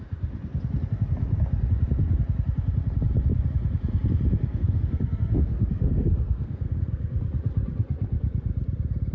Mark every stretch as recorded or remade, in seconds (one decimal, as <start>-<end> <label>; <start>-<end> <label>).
0.0-4.5 recorded; 4.5-7.2 remade; 7.2-9.1 recorded